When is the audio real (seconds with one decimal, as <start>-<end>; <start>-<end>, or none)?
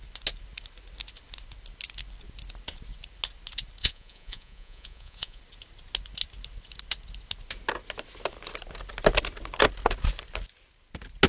0.0-3.8; 5.4-11.3